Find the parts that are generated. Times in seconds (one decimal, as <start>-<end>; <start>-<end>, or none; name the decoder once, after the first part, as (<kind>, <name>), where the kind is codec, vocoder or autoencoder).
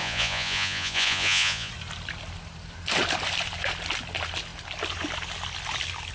0.0-1.7 (vocoder, Vocos)